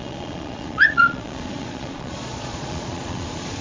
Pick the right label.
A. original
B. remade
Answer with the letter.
B